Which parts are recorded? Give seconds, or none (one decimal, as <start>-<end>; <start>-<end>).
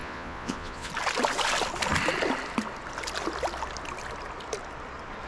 0.9-5.3